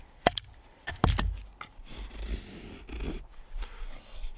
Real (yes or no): yes